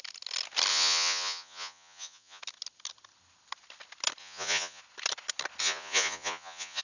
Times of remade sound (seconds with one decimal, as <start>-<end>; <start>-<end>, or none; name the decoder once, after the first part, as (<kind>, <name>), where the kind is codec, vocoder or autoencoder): 0.7-2.4 (vocoder, Vocos); 4.2-4.8; 5.6-6.8